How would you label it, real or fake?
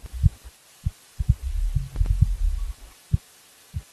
real